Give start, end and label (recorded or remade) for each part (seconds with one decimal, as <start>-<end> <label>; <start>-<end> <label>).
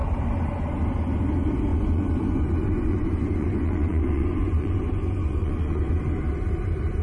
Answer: 0.0-1.7 recorded; 1.7-5.9 remade; 5.9-7.0 recorded